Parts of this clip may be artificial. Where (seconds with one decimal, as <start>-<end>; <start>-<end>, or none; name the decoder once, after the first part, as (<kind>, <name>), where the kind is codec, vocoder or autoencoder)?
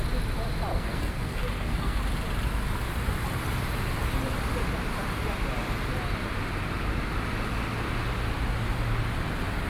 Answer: 0.7-2.0 (codec, SNAC)